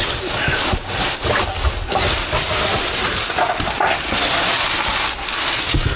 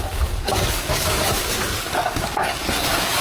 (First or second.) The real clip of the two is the first